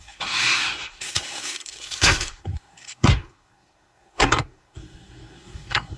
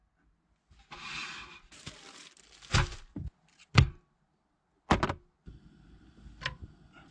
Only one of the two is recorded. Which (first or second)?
second